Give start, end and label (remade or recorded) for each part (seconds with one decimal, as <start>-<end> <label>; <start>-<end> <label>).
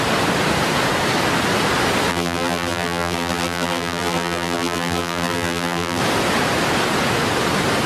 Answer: 0.0-2.1 recorded; 2.1-6.0 remade; 6.0-7.9 recorded